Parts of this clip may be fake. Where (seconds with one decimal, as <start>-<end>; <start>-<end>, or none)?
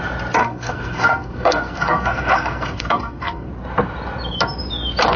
0.4-3.5